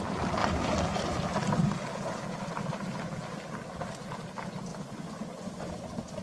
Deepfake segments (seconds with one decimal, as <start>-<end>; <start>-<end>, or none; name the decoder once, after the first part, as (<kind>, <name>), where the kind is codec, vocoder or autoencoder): 4.7-5.7 (vocoder, Vocos)